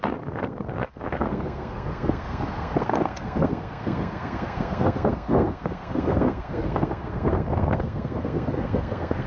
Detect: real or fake fake